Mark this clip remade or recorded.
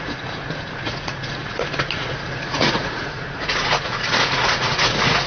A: remade